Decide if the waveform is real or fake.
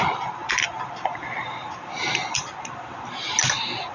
real